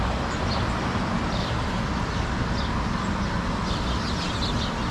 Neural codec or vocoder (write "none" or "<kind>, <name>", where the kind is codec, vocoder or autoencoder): none